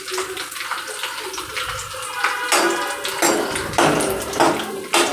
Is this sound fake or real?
real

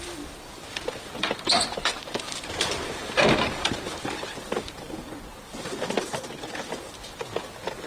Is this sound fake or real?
fake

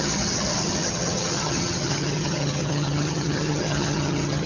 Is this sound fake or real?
fake